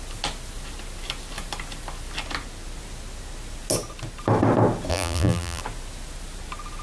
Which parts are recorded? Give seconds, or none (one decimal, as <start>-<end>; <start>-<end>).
0.0-4.9; 5.6-6.8